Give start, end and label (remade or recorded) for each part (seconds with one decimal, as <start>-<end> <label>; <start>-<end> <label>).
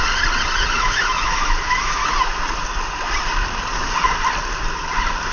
0.0-0.7 recorded; 0.7-2.0 remade; 2.0-5.3 recorded